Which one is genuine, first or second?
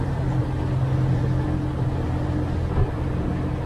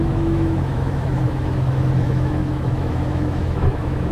first